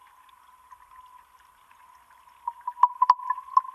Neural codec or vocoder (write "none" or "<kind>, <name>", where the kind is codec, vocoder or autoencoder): none